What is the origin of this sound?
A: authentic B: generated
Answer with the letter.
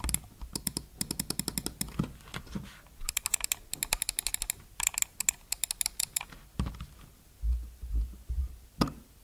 A